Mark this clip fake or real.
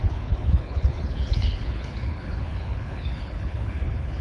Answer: fake